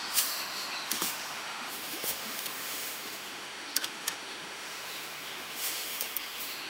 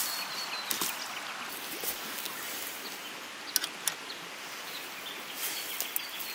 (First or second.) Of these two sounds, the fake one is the first